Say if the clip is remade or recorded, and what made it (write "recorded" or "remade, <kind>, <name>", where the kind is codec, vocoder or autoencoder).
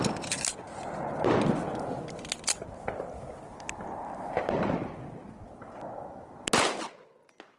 recorded